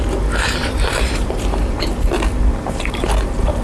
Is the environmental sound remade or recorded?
remade